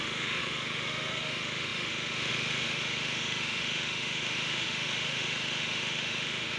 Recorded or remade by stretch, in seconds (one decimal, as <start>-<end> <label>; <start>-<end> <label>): 0.0-6.6 remade